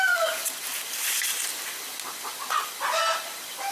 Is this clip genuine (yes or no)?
yes